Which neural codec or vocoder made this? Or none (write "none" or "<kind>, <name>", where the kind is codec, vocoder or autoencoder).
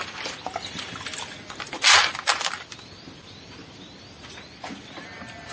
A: none